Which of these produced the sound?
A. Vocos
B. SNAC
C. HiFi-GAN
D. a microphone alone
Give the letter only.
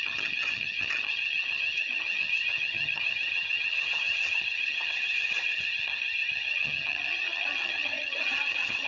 C